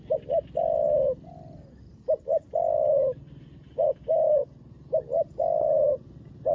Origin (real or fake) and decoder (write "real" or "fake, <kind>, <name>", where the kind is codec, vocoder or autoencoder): real